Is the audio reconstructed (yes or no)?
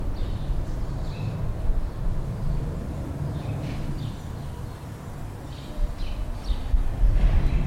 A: no